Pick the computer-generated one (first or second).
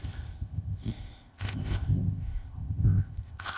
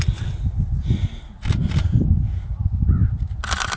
first